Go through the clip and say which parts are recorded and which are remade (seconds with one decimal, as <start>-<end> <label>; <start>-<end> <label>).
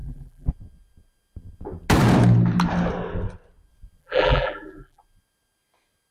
0.0-0.5 remade; 0.5-4.0 recorded; 4.0-5.0 remade; 5.0-6.1 recorded